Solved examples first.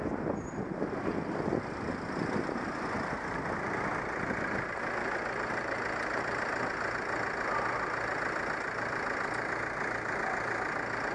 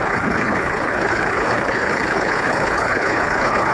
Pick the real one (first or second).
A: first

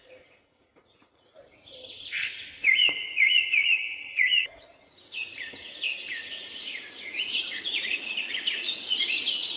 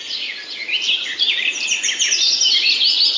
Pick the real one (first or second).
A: second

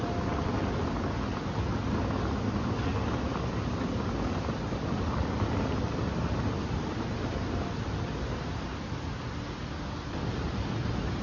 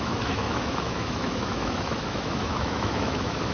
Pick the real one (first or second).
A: first